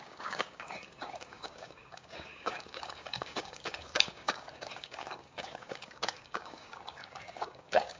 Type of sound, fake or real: fake